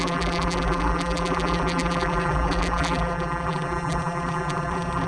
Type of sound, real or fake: fake